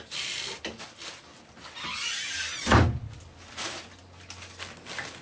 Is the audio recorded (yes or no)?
yes